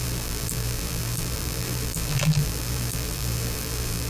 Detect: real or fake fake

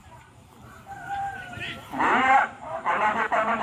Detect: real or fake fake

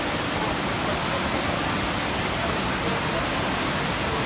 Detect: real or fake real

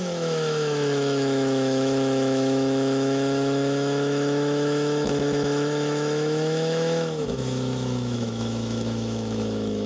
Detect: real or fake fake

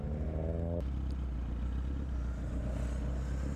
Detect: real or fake real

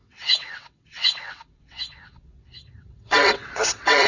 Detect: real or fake fake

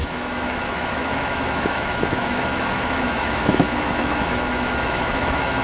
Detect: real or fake fake